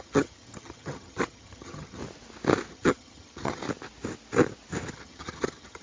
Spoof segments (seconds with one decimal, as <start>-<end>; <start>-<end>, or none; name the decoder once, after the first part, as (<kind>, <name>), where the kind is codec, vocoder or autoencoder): 0.0-2.0 (vocoder, HiFi-GAN); 2.7-3.6; 4.9-5.8